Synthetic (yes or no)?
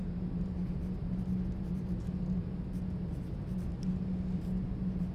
no